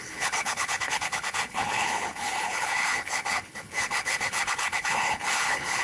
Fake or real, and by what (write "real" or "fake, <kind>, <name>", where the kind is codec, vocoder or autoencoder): fake, codec, HILCodec